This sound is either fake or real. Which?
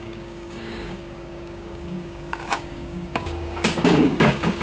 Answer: fake